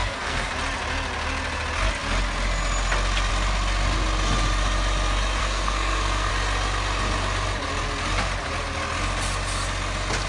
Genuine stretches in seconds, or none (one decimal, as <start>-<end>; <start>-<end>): 0.5-5.4; 6.3-10.3